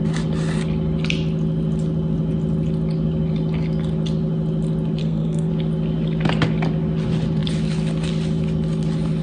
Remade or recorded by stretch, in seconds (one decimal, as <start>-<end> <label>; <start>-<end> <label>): 0.0-5.0 recorded; 5.0-5.5 remade; 5.5-9.2 recorded